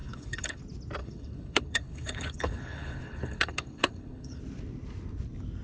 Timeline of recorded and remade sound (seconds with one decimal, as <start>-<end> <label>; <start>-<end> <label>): 0.0-0.6 remade; 0.6-1.0 recorded; 1.0-4.4 remade; 4.4-5.6 recorded